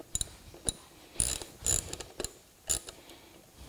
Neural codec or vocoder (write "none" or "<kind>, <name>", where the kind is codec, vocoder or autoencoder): none